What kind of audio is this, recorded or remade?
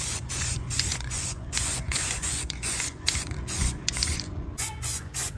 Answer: remade